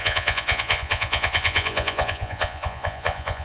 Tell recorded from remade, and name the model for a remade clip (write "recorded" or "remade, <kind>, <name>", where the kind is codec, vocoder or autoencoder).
remade, vocoder, Vocos